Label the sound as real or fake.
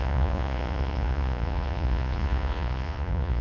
fake